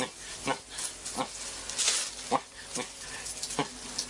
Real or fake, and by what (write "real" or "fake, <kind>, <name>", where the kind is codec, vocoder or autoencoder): real